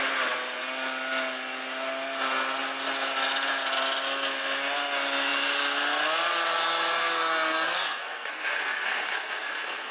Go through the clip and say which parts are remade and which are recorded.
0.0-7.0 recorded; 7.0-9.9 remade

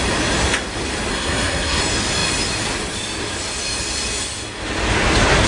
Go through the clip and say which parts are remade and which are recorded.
0.0-1.1 recorded; 1.1-1.8 remade; 1.8-5.5 recorded

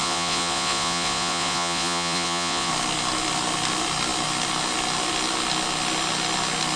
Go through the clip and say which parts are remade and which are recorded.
0.0-2.7 remade; 2.7-6.8 recorded

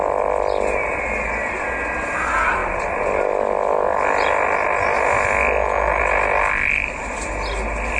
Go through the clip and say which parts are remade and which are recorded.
0.0-8.0 recorded

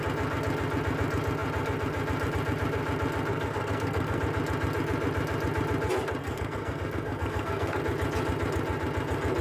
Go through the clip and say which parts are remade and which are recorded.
0.0-3.3 recorded; 3.3-4.2 remade; 4.2-6.2 recorded; 6.2-7.8 remade; 7.8-9.4 recorded

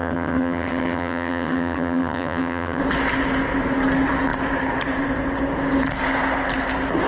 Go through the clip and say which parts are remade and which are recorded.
0.0-2.8 remade; 2.8-7.1 recorded

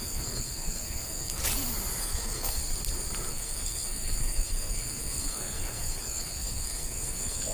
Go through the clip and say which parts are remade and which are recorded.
0.0-1.4 remade; 1.4-2.0 recorded; 2.0-2.6 remade; 2.6-3.3 recorded; 3.3-7.5 remade

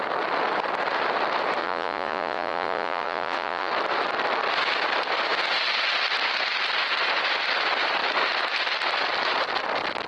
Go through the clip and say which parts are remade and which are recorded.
0.0-1.6 recorded; 1.6-3.7 remade; 3.7-10.1 recorded